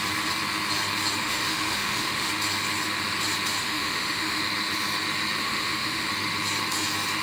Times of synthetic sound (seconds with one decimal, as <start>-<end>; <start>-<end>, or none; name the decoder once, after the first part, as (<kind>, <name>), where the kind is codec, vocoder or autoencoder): 1.2-2.3 (autoencoder, DAC-VAE); 3.6-4.4; 5.4-6.1